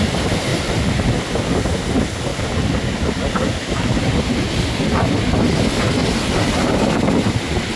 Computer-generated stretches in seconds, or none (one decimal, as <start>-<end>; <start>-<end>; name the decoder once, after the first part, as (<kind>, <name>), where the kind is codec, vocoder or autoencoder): 0.5-1.2 (vocoder, BigVGAN v2); 2.3-3.3; 6.0-6.8